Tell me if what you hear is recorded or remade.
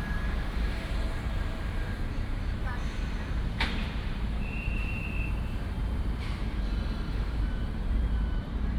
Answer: remade